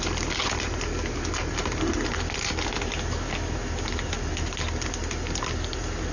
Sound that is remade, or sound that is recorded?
recorded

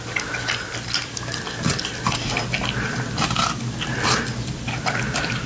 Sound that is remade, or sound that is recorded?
recorded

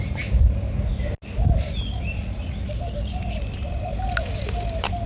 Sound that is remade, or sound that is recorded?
recorded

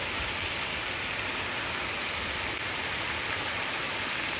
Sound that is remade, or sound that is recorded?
recorded